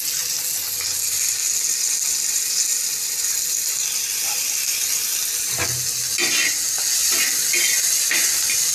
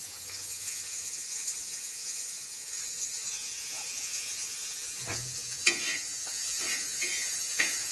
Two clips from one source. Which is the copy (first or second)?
second